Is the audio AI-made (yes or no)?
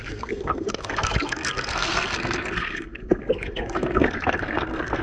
yes